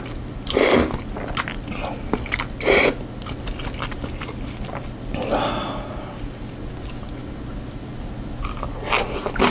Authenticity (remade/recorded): recorded